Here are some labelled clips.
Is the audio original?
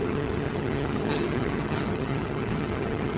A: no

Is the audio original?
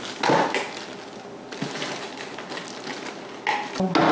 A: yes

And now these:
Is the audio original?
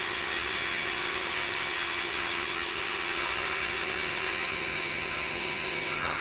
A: no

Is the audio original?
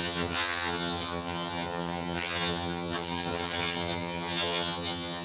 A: no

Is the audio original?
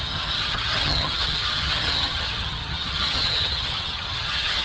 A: no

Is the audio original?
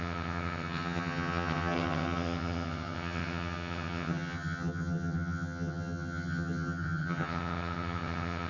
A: no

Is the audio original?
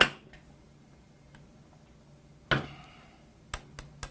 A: yes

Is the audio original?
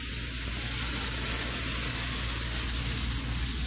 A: yes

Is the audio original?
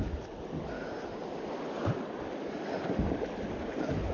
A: yes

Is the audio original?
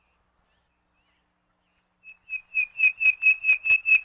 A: yes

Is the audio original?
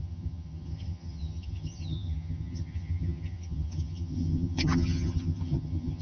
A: no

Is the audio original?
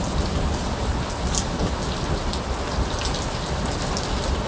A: yes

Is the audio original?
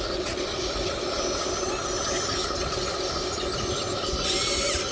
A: yes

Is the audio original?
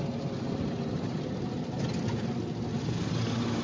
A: yes